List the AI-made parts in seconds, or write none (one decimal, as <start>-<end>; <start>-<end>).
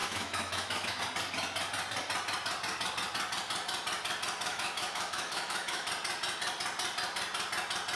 0.0-1.0; 4.5-5.9